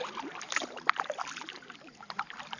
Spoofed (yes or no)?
no